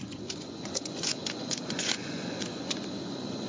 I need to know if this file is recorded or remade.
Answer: remade